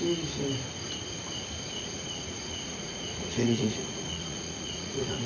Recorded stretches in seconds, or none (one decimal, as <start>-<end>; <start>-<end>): 0.0-1.7